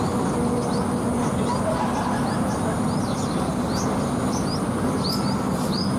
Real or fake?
real